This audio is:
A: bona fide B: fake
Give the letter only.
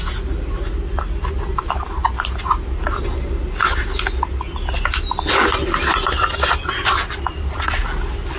A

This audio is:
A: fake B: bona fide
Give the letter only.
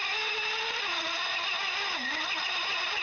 B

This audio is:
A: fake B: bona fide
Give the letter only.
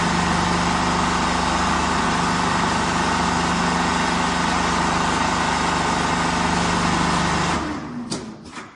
B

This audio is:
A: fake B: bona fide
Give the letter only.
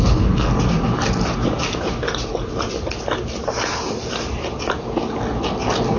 B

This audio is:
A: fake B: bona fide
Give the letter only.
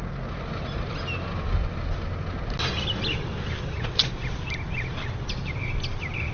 B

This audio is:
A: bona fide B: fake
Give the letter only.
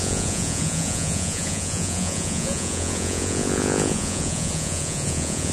B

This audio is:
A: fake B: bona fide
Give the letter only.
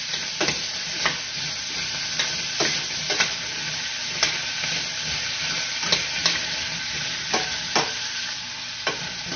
B